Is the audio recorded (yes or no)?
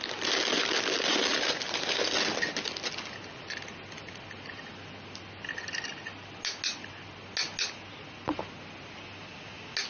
yes